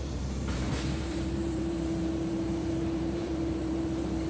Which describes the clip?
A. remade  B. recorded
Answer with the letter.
A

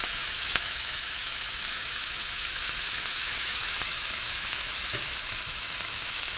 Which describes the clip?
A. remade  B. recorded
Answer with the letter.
A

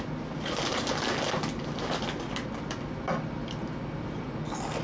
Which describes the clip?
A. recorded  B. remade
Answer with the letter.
A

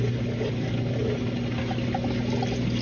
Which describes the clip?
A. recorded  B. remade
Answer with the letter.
A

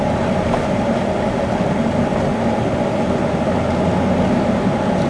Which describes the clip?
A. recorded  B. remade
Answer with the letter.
A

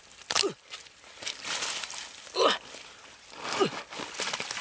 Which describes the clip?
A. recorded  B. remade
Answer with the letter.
A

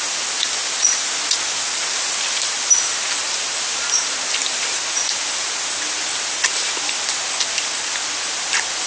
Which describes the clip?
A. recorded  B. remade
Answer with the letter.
A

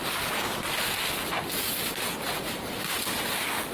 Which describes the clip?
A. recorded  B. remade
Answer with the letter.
A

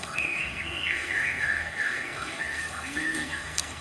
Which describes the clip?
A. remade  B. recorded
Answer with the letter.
A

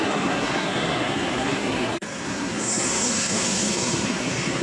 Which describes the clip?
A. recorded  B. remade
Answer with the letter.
B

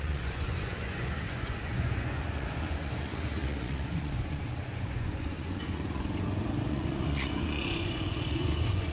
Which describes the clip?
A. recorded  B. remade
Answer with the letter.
B